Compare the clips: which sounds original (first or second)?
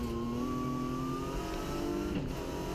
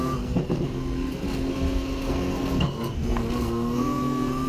first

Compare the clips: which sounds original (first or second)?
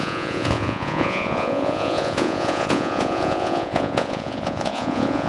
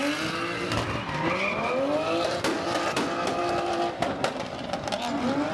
second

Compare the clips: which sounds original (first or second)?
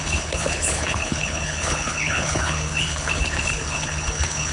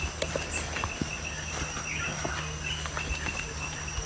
second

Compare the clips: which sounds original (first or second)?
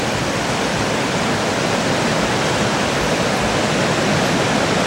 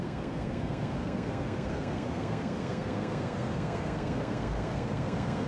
first